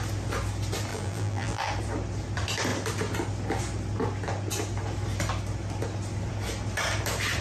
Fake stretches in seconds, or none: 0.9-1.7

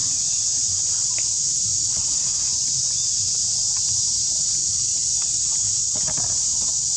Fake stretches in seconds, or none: 0.7-1.7; 3.6-4.6; 5.5-7.0

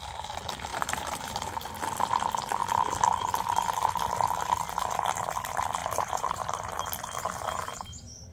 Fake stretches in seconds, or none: 0.7-1.5; 5.8-6.9